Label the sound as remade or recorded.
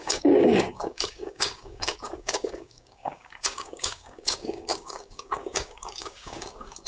remade